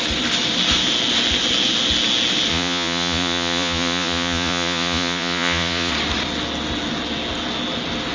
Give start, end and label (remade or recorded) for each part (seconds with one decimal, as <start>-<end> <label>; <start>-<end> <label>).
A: 0.0-2.5 recorded; 2.5-5.9 remade; 5.9-8.1 recorded